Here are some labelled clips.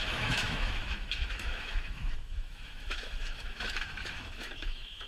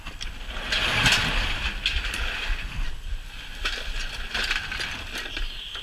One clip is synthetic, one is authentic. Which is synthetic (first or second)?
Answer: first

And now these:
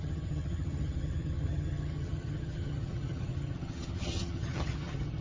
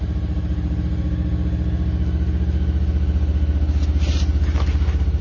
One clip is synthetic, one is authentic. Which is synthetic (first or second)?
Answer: first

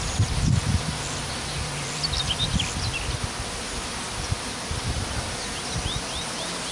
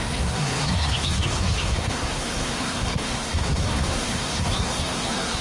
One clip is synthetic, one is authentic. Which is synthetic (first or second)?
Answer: second